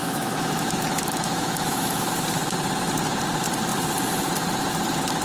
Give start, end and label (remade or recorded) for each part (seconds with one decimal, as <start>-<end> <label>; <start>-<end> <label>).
0.0-2.1 remade; 2.1-5.2 recorded